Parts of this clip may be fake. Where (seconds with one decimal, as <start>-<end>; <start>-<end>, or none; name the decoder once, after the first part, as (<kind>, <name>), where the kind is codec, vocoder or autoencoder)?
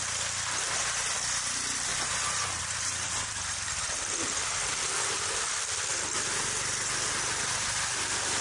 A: 0.0-1.9 (vocoder, BigVGAN v2); 2.6-5.9; 7.5-8.4